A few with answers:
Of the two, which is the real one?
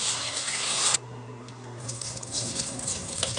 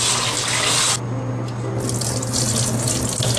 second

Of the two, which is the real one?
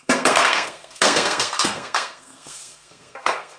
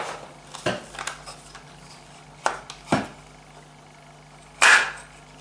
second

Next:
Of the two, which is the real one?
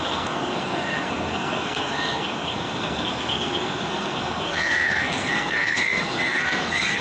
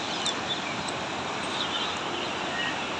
second